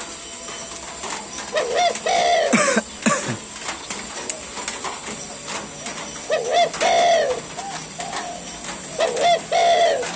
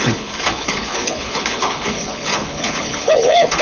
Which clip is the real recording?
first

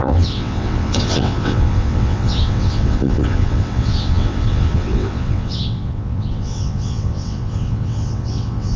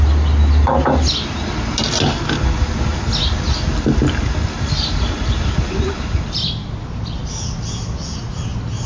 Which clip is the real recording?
second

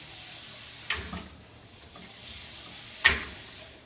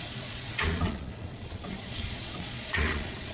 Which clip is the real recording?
first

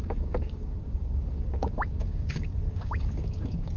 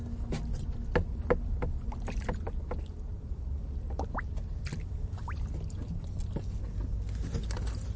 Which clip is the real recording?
second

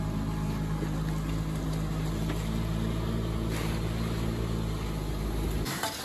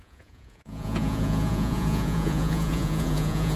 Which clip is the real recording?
first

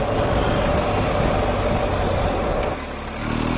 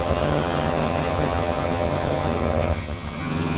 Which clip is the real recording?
first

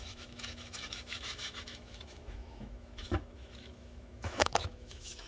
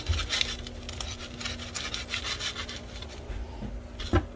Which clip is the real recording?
second